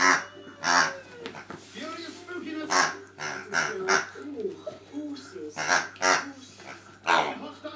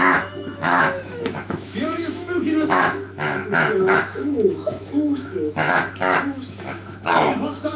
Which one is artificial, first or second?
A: second